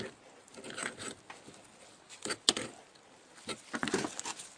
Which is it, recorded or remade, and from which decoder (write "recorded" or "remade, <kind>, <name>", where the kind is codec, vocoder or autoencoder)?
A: recorded